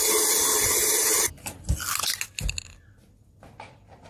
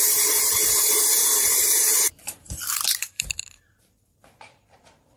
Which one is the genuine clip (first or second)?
first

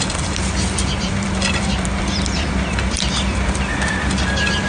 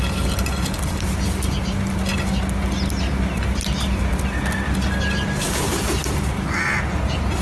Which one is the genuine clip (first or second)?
second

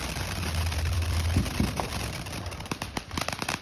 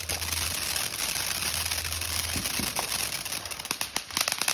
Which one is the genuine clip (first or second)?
second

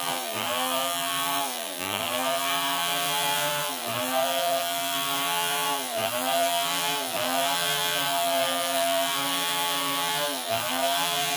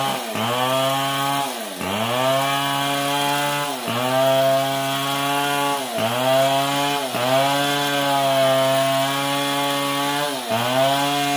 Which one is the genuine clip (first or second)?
second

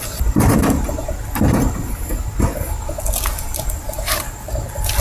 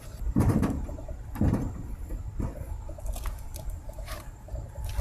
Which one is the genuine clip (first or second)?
first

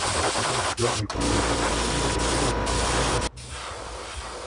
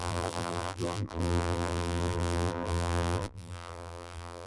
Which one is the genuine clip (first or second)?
first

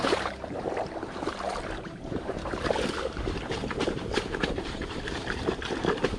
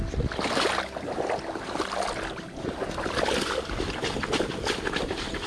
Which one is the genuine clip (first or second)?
second